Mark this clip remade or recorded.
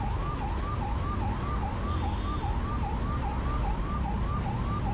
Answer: recorded